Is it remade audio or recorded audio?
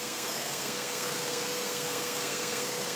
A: remade